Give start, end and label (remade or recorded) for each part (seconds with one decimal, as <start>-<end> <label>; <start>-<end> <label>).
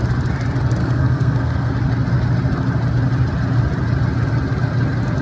0.0-0.8 recorded; 0.8-1.7 remade; 1.7-5.2 recorded